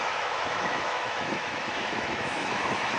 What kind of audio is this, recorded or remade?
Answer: remade